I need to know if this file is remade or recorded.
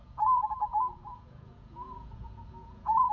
remade